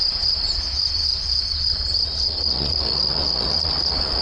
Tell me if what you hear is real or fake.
fake